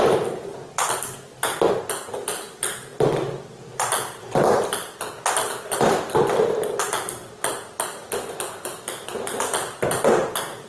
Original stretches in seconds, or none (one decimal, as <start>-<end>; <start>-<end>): 0.0-10.7